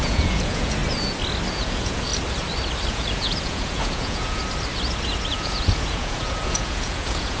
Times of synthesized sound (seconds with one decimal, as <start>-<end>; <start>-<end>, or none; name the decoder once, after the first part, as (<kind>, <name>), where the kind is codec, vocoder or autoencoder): 0.0-0.8 (vocoder, Vocos); 1.5-2.1; 2.9-4.4; 5.3-7.4